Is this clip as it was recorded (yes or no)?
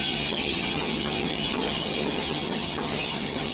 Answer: no